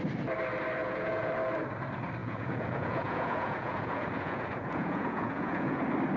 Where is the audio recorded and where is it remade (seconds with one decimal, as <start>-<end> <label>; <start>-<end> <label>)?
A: 0.0-0.8 recorded; 0.8-1.3 remade; 1.3-2.2 recorded; 2.2-5.8 remade; 5.8-6.2 recorded